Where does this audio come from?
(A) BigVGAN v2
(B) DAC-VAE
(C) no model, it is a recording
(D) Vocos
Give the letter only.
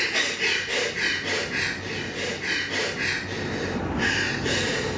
C